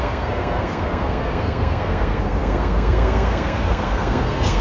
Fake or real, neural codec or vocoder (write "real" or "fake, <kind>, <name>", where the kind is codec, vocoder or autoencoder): fake, codec, SNAC